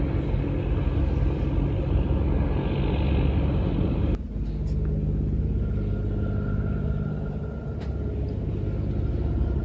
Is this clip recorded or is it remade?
recorded